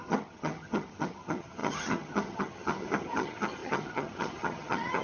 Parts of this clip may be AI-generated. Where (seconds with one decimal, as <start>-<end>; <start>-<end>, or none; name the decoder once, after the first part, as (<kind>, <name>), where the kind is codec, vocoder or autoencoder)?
0.0-5.0 (vocoder, HiFi-GAN)